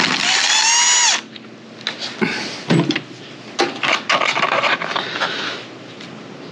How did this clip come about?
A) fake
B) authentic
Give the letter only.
B